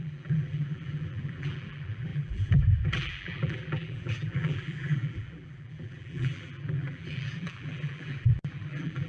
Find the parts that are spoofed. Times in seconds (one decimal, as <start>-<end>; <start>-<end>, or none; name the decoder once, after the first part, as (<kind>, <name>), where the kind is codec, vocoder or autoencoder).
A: 0.0-9.1 (vocoder, BigVGAN v2)